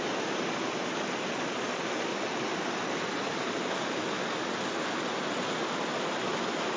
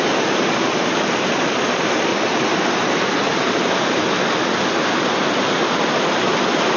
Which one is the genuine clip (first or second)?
first